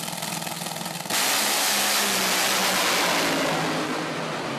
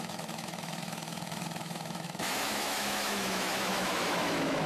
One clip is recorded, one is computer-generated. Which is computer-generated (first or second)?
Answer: second